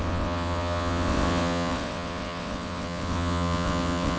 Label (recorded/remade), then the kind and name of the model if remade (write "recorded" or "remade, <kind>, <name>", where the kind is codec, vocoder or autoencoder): remade, vocoder, WaveNeXt